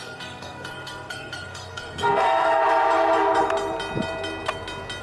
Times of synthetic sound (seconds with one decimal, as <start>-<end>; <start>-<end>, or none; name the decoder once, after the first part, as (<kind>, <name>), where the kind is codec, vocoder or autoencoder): 0.0-2.6 (codec, SNAC)